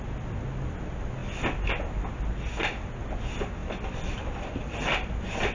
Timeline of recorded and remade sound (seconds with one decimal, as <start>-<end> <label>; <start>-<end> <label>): 0.0-5.5 recorded